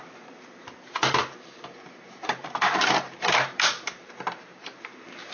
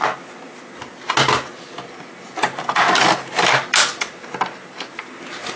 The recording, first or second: second